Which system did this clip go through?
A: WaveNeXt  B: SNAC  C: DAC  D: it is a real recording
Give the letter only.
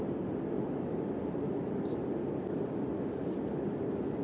D